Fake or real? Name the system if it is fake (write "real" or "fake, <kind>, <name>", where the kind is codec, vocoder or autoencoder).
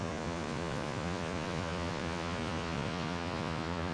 fake, vocoder, Vocos